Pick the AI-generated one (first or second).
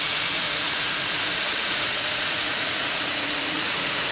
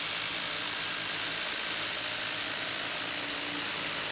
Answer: first